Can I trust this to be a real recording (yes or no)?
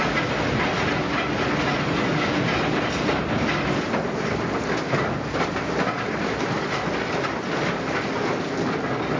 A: yes